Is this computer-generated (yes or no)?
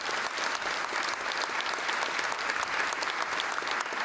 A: no